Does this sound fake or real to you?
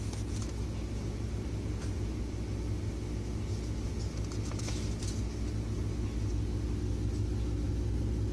real